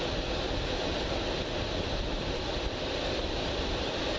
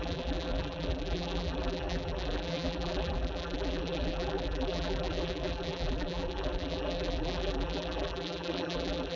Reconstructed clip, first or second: second